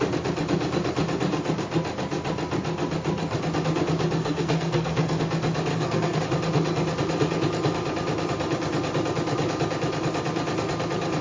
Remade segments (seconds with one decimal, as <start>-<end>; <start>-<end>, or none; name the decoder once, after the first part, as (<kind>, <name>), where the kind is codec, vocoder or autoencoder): 4.2-5.2 (codec, SNAC); 5.7-6.2